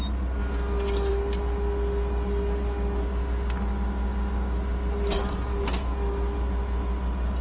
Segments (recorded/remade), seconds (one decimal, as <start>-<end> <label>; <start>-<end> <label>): 0.0-7.4 recorded